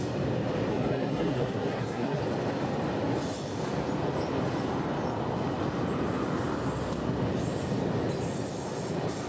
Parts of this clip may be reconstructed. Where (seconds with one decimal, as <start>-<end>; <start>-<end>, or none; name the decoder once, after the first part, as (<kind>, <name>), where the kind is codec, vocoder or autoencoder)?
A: 0.7-2.2 (codec, SNAC)